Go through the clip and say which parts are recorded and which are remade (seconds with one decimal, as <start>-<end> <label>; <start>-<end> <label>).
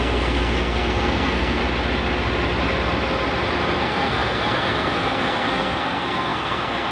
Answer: 0.0-1.6 remade; 1.6-3.8 recorded; 3.8-6.9 remade